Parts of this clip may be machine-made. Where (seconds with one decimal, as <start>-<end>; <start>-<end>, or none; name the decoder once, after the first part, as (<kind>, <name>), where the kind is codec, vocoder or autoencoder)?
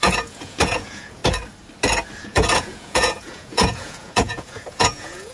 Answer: 0.0-1.2 (vocoder, Vocos); 2.2-5.3